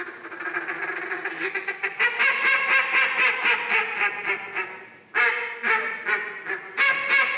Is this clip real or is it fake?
real